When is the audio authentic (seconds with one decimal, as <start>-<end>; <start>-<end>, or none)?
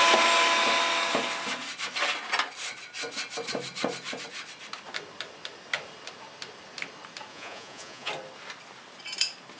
0.0-7.3; 8.1-9.6